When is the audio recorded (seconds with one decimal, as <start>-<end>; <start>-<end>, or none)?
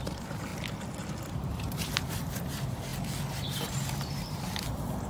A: 0.5-1.3; 2.9-3.6